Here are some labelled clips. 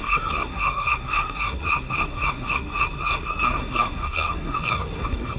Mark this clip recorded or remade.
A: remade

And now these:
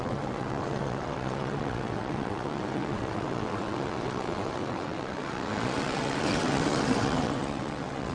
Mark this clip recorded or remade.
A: remade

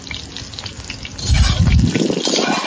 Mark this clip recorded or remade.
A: recorded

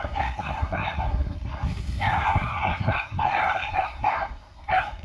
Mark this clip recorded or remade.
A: remade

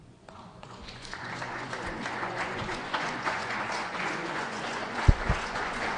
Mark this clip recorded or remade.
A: remade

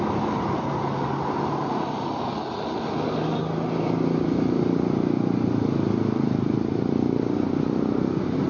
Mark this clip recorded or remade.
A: recorded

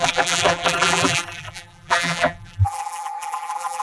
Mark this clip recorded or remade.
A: remade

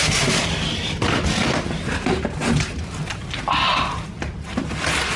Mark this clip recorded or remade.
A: recorded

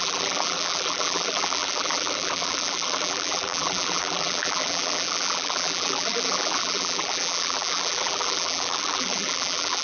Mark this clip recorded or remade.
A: remade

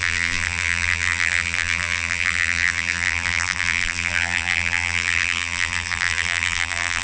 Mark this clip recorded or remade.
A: remade